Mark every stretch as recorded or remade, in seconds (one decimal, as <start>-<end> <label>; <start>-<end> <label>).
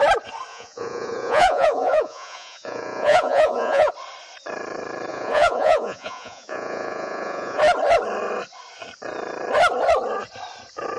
0.0-0.5 recorded; 0.5-3.9 remade; 3.9-5.1 recorded; 5.1-7.6 remade; 7.6-11.0 recorded